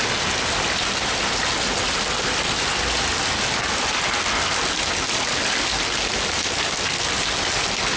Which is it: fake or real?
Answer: real